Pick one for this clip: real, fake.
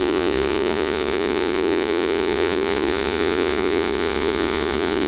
fake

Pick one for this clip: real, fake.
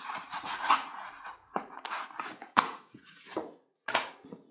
fake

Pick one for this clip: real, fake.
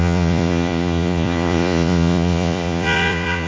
fake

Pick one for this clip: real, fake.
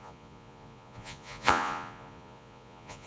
fake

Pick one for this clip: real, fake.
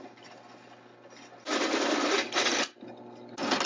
real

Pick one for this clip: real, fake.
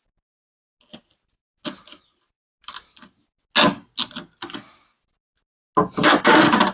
real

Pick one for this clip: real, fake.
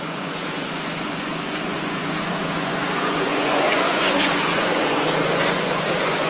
fake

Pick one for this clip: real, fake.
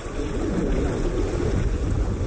fake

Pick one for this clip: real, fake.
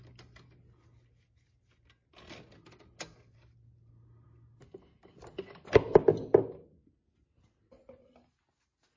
real